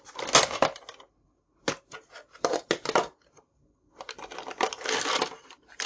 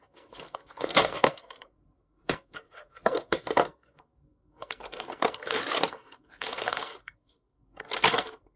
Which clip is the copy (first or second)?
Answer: second